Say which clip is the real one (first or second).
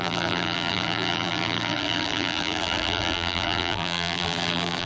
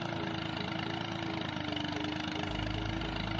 second